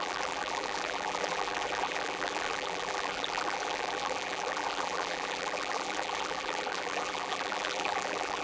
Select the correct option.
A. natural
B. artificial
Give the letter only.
B